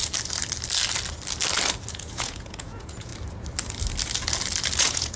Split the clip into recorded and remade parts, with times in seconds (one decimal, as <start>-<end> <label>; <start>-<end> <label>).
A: 0.0-1.9 recorded; 1.9-3.1 remade; 3.1-4.8 recorded; 4.8-5.2 remade